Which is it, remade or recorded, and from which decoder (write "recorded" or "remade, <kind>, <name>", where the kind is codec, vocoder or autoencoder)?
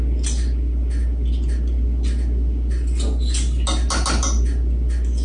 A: recorded